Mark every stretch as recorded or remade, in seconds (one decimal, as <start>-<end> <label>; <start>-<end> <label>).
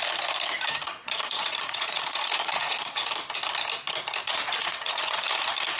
0.0-1.0 recorded; 1.0-3.0 remade; 3.0-4.2 recorded; 4.2-5.2 remade; 5.2-5.8 recorded